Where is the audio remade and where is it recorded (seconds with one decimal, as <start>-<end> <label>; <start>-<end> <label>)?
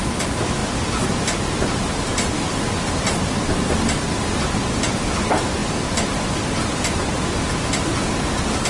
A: 0.0-8.7 recorded